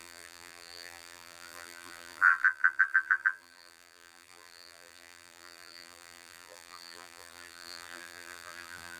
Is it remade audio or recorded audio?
remade